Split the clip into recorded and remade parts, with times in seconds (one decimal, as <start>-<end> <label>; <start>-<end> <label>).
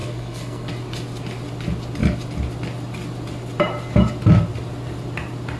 0.0-0.7 remade; 0.7-5.6 recorded